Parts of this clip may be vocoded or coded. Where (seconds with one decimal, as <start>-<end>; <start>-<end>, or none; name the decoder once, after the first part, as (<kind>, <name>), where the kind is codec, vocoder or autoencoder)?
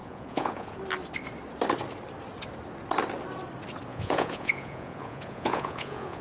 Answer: 0.0-0.8 (vocoder, Vocos); 3.9-6.2